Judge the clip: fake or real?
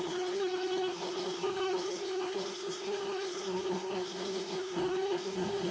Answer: fake